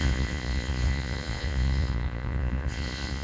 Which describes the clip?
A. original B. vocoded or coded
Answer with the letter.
B